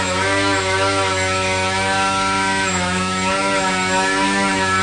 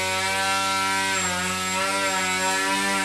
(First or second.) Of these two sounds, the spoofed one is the first